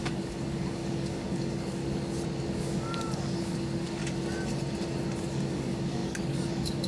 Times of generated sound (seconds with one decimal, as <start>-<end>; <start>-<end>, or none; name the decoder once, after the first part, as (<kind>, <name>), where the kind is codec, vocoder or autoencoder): 0.0-1.8 (codec, DAC); 2.5-4.0; 5.2-6.9